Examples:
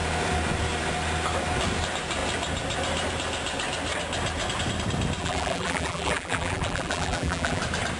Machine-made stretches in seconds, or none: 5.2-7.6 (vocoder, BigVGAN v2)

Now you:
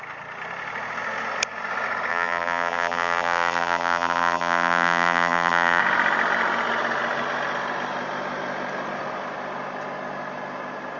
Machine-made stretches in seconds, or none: 2.1-5.8 (vocoder, BigVGAN v2)

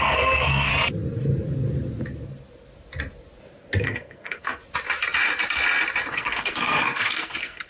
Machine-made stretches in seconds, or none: 0.0-0.7 (codec, SNAC); 3.8-4.6; 6.1-7.7